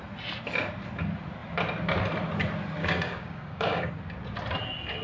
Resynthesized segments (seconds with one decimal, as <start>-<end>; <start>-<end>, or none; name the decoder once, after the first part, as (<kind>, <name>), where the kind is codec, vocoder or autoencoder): 2.8-3.9 (codec, DAC)